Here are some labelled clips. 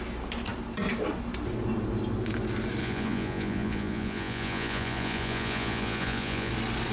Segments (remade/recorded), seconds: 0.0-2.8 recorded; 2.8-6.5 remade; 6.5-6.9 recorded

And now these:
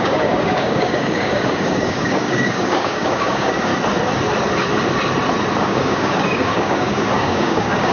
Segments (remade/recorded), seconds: 0.0-3.7 remade; 3.7-5.6 recorded; 5.6-7.9 remade